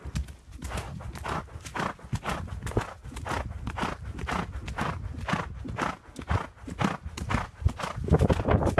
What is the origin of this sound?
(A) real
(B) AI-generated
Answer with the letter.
A